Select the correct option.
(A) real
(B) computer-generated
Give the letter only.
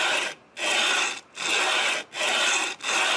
A